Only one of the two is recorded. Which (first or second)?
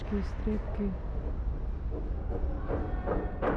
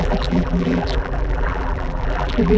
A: first